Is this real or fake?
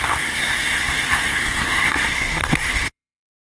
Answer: fake